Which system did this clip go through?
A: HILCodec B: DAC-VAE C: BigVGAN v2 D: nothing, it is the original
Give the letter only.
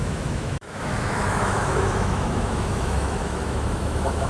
B